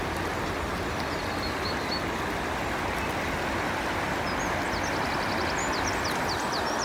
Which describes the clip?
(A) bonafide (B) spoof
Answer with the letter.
A